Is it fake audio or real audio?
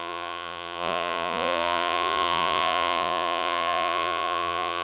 fake